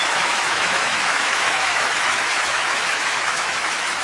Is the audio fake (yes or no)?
yes